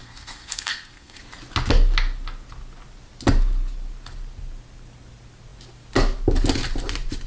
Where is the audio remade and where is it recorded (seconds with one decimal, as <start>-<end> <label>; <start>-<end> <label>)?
0.0-1.2 remade; 1.2-7.3 recorded